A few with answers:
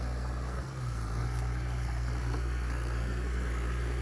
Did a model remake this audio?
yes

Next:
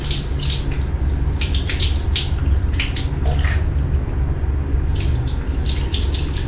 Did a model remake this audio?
no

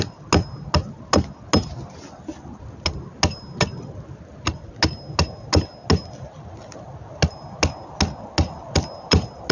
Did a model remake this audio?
no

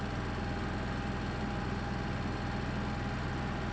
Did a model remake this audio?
no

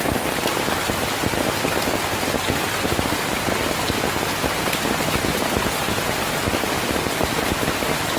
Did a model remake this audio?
no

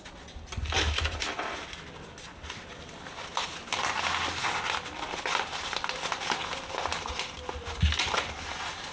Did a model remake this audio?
no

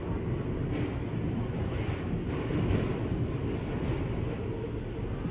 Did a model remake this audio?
no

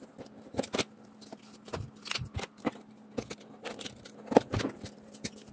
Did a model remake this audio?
no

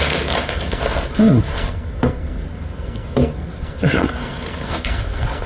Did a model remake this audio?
yes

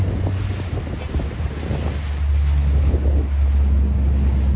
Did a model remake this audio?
no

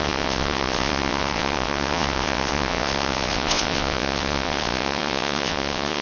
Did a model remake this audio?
yes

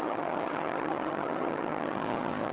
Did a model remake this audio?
yes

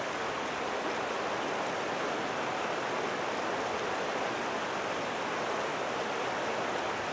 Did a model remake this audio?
no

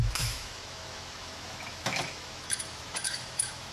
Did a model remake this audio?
yes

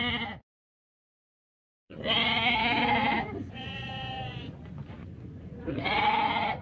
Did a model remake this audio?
yes